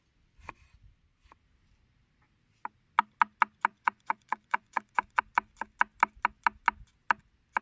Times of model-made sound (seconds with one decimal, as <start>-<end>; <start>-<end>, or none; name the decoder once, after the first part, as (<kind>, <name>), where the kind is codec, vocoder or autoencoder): 3.7-5.2 (vocoder, Vocos)